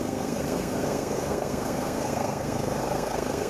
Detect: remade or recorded remade